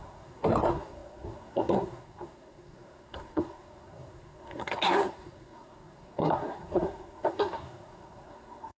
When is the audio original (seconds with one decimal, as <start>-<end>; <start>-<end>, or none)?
none